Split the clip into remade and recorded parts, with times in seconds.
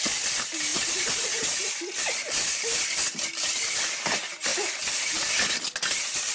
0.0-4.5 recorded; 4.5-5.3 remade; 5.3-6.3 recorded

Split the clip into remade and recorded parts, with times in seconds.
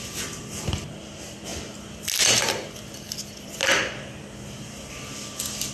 0.0-5.7 recorded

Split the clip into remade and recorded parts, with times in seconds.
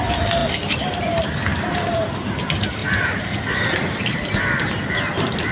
0.0-1.5 recorded; 1.5-2.3 remade; 2.3-2.8 recorded; 2.8-4.0 remade; 4.0-5.5 recorded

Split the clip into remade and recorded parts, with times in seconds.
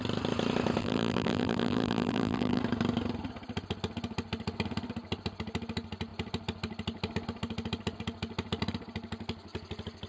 0.0-0.8 recorded; 0.8-2.6 remade; 2.6-10.1 recorded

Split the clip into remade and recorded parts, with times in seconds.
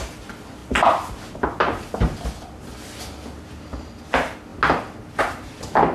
0.0-5.9 recorded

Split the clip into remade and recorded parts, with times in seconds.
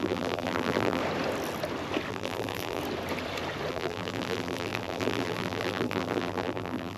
0.0-1.0 remade; 1.0-2.1 recorded; 2.1-2.8 remade; 2.8-3.7 recorded; 3.7-7.0 remade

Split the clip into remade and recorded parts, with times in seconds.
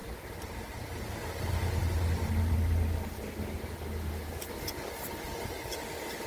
0.0-6.3 recorded